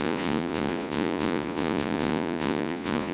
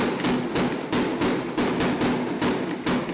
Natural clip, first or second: second